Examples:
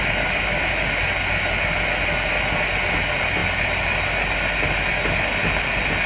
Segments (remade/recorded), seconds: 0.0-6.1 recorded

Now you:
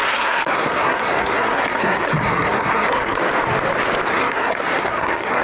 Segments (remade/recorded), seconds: 0.0-3.2 remade; 3.2-4.1 recorded; 4.1-5.4 remade